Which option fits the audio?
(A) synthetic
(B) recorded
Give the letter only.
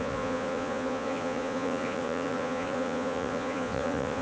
A